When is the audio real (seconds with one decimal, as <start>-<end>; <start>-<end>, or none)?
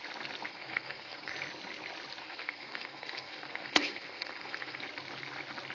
0.0-0.5; 1.3-2.2; 4.8-5.7